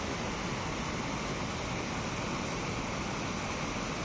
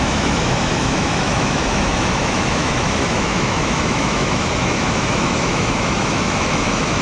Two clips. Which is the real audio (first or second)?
first